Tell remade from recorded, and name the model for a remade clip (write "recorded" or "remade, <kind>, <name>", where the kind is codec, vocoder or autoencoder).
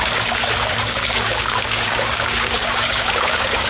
remade, codec, DAC